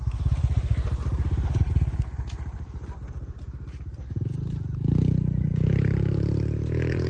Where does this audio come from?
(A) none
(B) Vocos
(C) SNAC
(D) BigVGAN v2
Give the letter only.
D